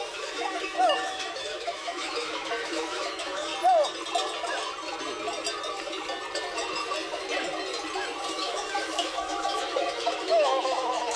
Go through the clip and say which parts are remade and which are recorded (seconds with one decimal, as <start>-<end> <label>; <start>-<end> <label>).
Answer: 0.0-3.5 remade; 3.5-8.3 recorded; 8.3-11.2 remade